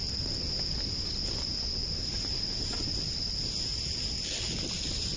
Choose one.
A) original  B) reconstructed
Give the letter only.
A